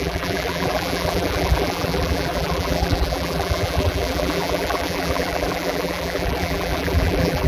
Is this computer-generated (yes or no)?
yes